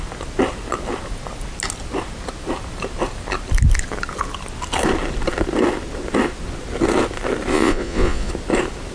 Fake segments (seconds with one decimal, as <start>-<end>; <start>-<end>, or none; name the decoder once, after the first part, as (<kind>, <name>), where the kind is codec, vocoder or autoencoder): 7.5-8.3 (vocoder, Vocos)